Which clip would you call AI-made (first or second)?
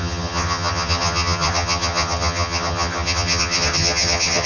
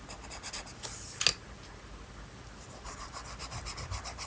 first